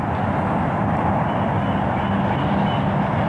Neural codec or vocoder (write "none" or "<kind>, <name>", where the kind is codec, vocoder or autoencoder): none